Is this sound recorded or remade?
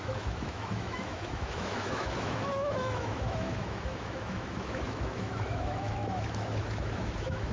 remade